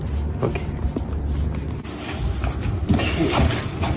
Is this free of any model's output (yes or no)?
yes